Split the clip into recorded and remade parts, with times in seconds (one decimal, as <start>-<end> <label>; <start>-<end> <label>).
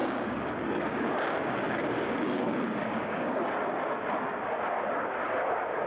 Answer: 0.0-3.5 remade; 3.5-5.9 recorded